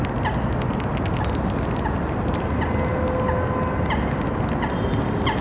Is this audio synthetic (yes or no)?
no